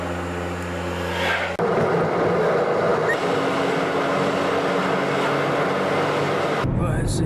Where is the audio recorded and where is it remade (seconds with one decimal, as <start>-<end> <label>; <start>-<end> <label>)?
0.0-7.3 recorded